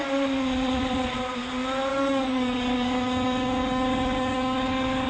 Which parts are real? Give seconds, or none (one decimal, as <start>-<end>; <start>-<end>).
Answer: 0.0-1.9